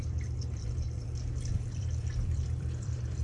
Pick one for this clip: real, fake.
fake